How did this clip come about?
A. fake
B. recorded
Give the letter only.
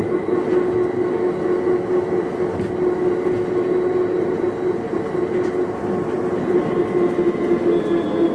B